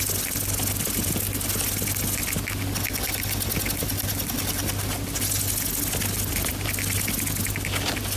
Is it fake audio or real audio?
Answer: real